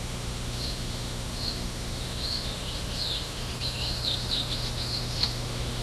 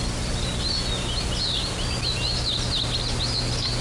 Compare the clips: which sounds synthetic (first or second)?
first